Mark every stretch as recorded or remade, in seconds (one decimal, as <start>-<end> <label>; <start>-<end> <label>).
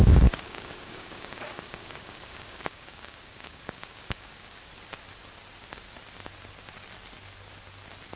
0.0-4.6 remade; 4.6-8.2 recorded